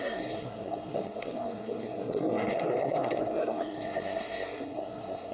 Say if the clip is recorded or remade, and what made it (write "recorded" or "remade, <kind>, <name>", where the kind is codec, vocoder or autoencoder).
remade, codec, SNAC